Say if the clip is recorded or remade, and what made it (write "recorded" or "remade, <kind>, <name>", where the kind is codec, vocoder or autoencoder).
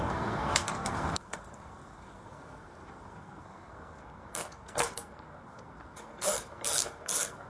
remade, codec, SNAC